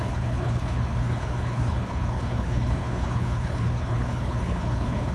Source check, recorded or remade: remade